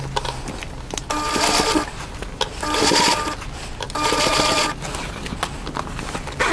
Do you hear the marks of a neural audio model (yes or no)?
no